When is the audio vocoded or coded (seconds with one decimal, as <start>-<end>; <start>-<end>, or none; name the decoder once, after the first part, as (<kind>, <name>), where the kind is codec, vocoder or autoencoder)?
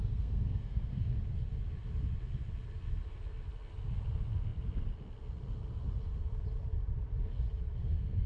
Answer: 0.0-1.2 (codec, SNAC); 7.8-8.3